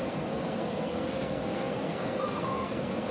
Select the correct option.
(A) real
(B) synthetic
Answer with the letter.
B